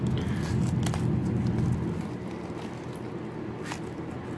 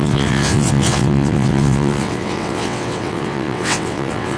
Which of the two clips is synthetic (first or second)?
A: second